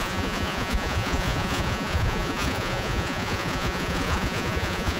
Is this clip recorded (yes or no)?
no